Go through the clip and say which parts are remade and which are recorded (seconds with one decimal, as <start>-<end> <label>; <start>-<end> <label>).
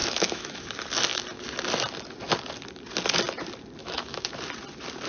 0.0-0.7 remade; 0.7-3.8 recorded; 3.8-4.3 remade; 4.3-5.1 recorded